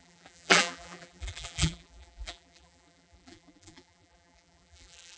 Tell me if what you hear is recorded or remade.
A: remade